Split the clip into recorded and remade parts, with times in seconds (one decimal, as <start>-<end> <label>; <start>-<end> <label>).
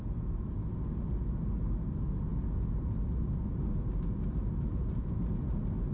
0.0-5.9 recorded